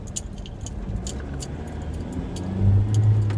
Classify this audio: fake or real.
real